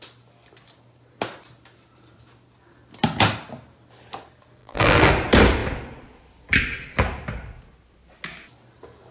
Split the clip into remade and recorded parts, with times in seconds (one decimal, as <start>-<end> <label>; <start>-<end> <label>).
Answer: 0.0-4.6 recorded; 4.6-5.1 remade; 5.1-9.1 recorded